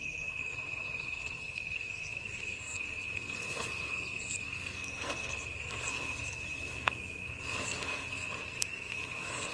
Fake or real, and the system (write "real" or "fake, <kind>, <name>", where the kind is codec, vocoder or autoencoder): fake, codec, SNAC